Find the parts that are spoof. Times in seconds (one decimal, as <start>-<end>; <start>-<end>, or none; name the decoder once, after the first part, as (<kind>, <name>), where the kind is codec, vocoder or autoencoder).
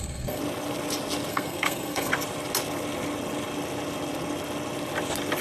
0.0-0.4 (codec, SNAC); 1.3-2.1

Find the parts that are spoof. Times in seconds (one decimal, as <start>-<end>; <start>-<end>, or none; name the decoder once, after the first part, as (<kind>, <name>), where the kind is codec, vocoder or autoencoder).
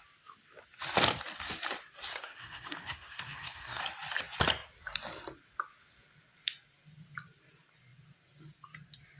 2.1-3.8 (codec, SNAC)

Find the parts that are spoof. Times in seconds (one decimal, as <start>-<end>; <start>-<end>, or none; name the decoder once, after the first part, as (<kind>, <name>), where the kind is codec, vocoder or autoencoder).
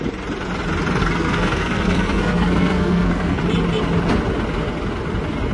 1.0-3.4 (codec, SNAC)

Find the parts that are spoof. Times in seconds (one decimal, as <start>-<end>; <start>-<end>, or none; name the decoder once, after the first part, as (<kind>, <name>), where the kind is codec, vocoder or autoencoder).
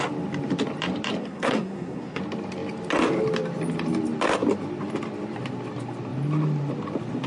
1.2-2.2 (codec, SNAC)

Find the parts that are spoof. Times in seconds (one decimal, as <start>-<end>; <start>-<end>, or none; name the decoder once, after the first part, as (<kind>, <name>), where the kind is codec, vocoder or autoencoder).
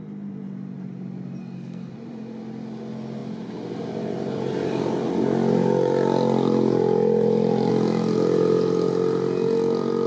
1.4-1.9 (codec, SNAC)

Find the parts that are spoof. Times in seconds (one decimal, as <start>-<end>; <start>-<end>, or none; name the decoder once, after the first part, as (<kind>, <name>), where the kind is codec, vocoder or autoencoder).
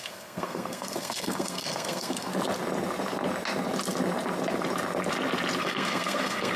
0.0-2.3 (codec, SNAC); 5.6-6.6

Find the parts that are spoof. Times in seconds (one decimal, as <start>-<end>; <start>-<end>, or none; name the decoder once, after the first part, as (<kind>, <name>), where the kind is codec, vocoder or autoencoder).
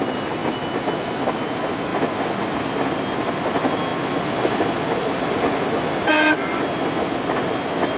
none